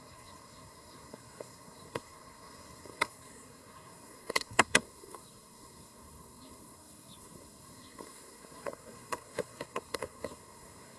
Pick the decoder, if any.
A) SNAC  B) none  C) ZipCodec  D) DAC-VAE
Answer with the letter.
A